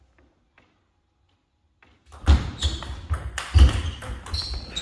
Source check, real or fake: real